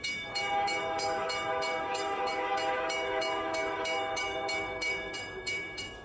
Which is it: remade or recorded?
remade